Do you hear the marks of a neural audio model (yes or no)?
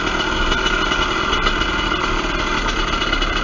no